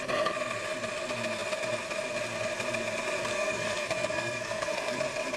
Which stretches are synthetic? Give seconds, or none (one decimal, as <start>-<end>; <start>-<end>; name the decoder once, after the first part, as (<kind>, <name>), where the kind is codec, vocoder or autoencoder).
3.3-5.0 (codec, SNAC)